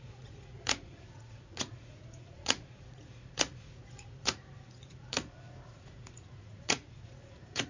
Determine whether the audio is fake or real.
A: fake